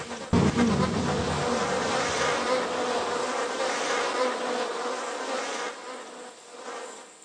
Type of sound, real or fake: real